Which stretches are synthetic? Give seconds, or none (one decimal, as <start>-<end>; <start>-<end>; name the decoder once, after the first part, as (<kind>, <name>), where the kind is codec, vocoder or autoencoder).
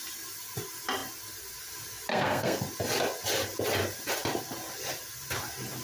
2.1-2.6 (codec, SNAC)